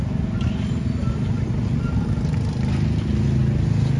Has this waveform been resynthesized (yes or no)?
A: no